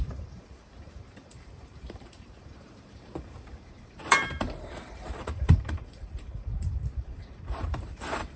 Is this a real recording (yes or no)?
no